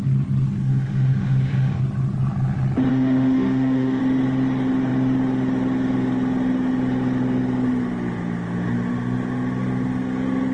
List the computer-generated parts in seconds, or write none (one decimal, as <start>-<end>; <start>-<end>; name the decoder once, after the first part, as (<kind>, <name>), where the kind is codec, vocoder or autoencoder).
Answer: 0.6-1.8 (autoencoder, DAC-VAE); 2.9-4.0